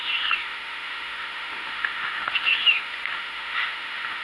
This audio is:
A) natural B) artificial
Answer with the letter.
B